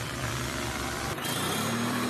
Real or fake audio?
fake